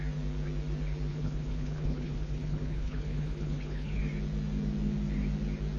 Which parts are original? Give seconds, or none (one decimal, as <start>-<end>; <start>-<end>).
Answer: 0.0-1.1; 4.0-5.8